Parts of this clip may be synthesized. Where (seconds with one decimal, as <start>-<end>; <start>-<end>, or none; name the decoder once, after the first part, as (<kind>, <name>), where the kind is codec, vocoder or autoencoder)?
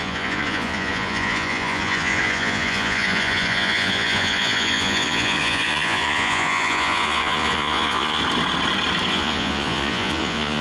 0.0-8.2 (vocoder, Vocos); 9.1-10.6